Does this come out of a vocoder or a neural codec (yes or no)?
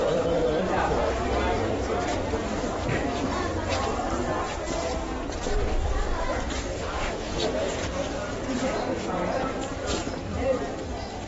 yes